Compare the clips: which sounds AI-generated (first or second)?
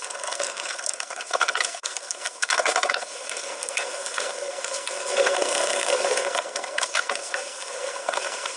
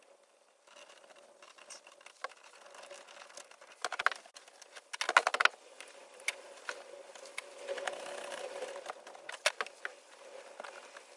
first